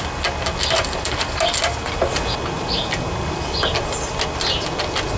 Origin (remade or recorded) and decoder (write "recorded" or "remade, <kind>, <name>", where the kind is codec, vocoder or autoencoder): recorded